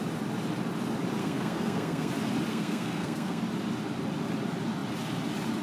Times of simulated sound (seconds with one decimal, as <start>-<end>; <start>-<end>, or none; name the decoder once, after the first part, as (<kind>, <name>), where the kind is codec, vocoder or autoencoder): 1.2-2.1 (codec, SNAC); 2.5-3.4